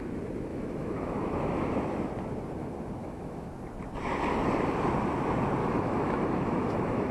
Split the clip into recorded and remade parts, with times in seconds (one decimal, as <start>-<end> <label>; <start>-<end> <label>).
0.0-0.5 recorded; 0.5-1.8 remade; 1.8-3.0 recorded; 3.0-3.5 remade; 3.5-5.6 recorded; 5.6-7.1 remade